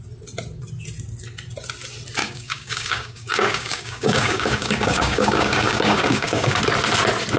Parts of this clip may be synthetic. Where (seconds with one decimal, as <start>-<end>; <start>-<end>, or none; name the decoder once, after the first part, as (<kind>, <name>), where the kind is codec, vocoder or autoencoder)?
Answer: 2.2-6.6 (codec, DAC)